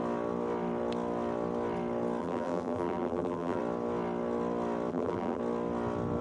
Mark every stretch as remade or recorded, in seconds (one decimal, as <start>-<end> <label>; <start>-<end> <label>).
0.0-2.2 recorded; 2.2-3.6 remade; 3.6-4.9 recorded; 4.9-5.4 remade; 5.4-6.2 recorded